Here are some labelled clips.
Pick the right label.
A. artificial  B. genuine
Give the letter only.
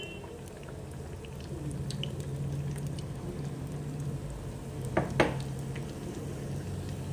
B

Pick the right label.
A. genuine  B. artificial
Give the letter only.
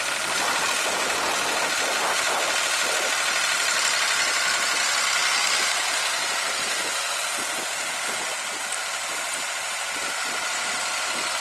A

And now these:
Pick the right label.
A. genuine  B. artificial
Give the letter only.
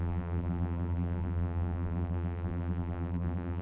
B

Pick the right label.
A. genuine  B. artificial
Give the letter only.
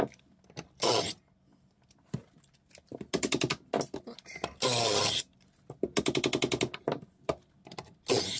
A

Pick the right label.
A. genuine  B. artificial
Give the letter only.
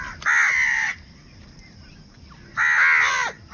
A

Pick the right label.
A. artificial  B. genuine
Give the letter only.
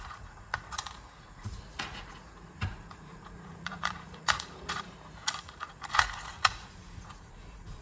A